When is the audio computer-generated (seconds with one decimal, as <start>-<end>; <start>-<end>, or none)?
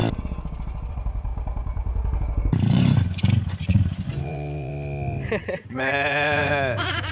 0.9-1.3; 2.7-4.7; 5.5-7.1